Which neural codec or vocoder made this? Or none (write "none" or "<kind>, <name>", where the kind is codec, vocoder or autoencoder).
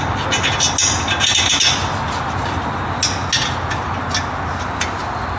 none